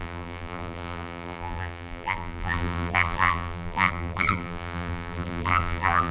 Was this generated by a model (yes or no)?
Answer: yes